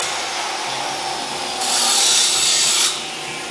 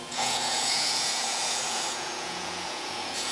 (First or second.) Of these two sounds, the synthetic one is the second